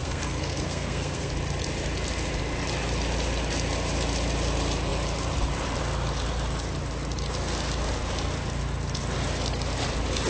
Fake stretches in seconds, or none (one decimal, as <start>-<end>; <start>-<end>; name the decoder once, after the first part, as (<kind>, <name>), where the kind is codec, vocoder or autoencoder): 0.0-1.3 (codec, SNAC)